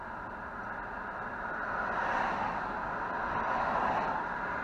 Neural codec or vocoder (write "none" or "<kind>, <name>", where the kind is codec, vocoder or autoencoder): none